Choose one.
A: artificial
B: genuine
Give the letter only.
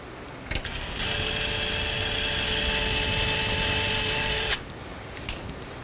B